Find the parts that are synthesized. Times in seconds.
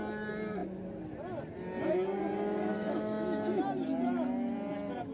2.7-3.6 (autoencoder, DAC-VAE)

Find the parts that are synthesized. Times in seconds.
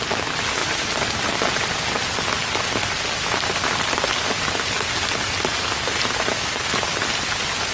none